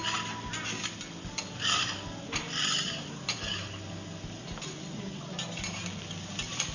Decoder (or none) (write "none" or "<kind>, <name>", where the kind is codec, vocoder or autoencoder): none